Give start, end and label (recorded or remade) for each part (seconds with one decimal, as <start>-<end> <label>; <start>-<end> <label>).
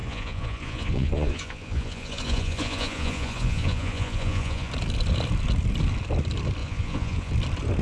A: 0.0-4.7 remade; 4.7-6.6 recorded; 6.6-7.3 remade; 7.3-7.8 recorded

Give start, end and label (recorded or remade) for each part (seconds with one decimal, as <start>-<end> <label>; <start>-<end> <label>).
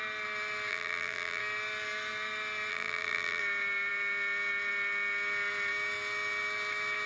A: 0.0-0.7 recorded; 0.7-1.4 remade; 1.4-2.7 recorded; 2.7-3.4 remade; 3.4-7.1 recorded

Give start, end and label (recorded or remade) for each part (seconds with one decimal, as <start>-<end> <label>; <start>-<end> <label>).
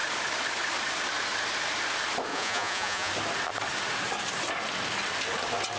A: 0.0-2.3 recorded; 2.3-3.1 remade; 3.1-5.8 recorded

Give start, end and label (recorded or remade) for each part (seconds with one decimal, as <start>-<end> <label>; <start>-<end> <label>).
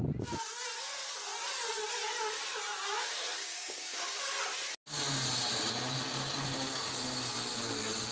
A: 0.0-3.4 recorded; 3.4-4.2 remade; 4.2-8.1 recorded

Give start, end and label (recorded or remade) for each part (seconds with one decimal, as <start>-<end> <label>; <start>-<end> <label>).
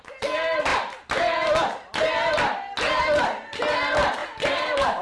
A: 0.0-5.0 recorded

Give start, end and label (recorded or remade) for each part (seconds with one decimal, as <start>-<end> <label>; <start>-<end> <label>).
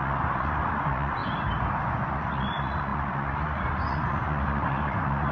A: 0.0-1.2 remade; 1.2-1.8 recorded; 1.8-5.3 remade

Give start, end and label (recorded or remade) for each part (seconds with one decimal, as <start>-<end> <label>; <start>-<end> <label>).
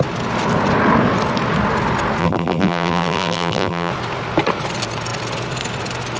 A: 0.0-2.2 recorded; 2.2-3.9 remade; 3.9-6.2 recorded